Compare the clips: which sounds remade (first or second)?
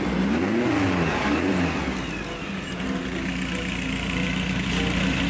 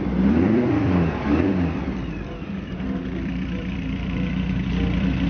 second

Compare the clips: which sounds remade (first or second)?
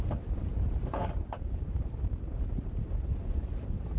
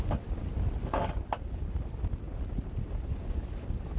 first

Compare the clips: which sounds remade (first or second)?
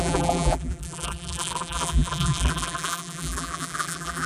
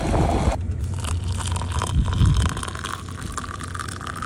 first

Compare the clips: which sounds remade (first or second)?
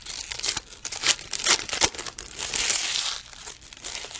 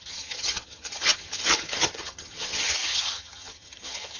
second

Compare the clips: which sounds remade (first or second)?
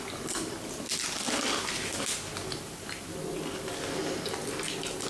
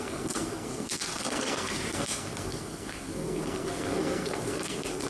second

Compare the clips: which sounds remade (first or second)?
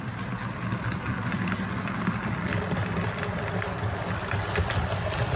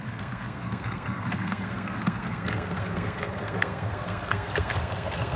second